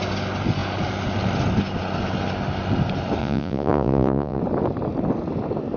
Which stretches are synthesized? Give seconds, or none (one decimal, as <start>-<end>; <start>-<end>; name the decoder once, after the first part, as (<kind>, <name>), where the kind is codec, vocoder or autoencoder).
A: 3.2-4.4 (vocoder, Vocos)